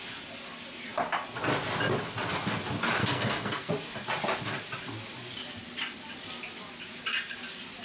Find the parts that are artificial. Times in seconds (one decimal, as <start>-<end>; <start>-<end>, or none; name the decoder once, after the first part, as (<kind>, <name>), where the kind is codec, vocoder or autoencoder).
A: 3.0-3.7 (codec, SNAC)